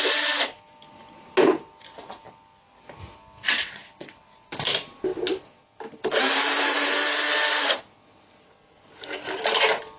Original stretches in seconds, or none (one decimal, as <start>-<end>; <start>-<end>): 0.0-3.4; 4.3-10.0

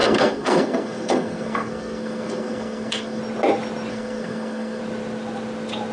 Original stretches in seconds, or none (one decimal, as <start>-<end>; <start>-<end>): 3.2-3.9; 4.8-5.9

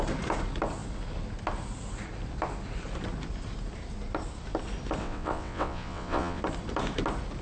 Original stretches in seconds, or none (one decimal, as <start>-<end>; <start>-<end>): 0.0-5.0; 6.4-7.4

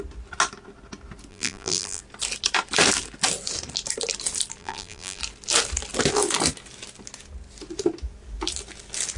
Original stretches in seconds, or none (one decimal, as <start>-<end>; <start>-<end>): 0.0-1.3; 2.0-4.6; 5.2-9.2